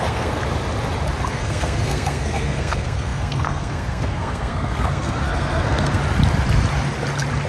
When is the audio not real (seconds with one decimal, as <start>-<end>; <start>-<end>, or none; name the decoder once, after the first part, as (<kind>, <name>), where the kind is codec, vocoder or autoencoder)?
0.0-0.4 (codec, SNAC); 1.3-6.0